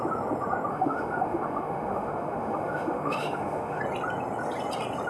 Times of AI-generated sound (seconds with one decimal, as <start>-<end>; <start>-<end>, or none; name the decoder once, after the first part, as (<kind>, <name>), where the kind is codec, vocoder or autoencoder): 0.7-3.8 (autoencoder, DAC-VAE)